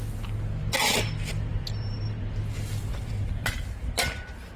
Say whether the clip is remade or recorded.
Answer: recorded